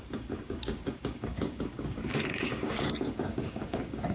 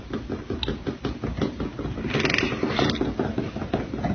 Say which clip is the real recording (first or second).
second